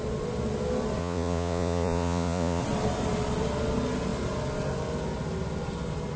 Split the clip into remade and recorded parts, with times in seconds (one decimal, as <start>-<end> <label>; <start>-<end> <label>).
0.0-1.0 recorded; 1.0-2.6 remade; 2.6-6.2 recorded